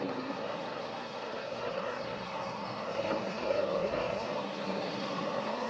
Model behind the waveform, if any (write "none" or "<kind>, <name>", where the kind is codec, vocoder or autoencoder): codec, SNAC